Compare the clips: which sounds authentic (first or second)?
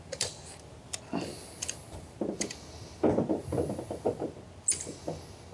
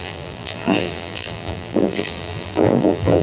first